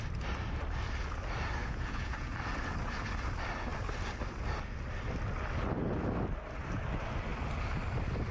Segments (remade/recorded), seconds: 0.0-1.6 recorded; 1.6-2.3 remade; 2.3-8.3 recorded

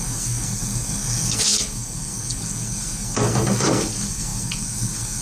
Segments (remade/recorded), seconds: 0.0-5.2 remade

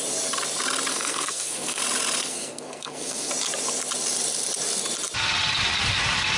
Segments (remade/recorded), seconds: 0.0-0.9 recorded; 0.9-1.8 remade; 1.8-2.2 recorded; 2.2-3.3 remade; 3.3-6.4 recorded

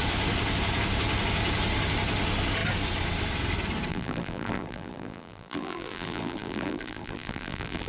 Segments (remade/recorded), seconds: 0.0-3.9 recorded; 3.9-7.9 remade

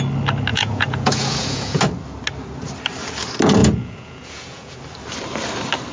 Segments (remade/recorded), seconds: 0.0-0.5 recorded; 0.5-1.8 remade; 1.8-3.6 recorded; 3.6-4.8 remade; 4.8-5.9 recorded

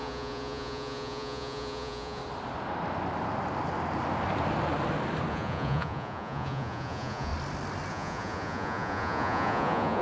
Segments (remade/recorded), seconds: 0.0-2.2 remade; 2.2-5.3 recorded; 5.3-7.3 remade; 7.3-7.9 recorded; 7.9-10.0 remade

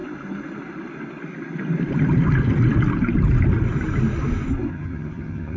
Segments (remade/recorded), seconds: 0.0-4.7 recorded; 4.7-5.6 remade

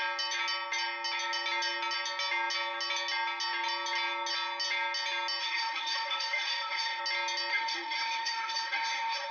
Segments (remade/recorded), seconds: 0.0-5.4 recorded; 5.4-7.0 remade; 7.0-7.5 recorded; 7.5-9.3 remade